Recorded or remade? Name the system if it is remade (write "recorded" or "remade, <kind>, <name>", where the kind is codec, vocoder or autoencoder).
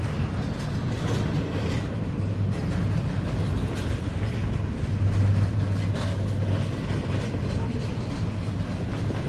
recorded